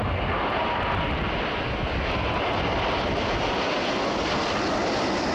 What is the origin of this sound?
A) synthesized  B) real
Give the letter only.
B